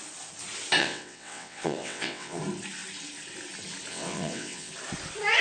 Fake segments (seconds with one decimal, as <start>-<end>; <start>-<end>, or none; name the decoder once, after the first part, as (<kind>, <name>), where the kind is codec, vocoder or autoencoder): 0.8-2.4 (vocoder, WaveNeXt); 3.9-4.7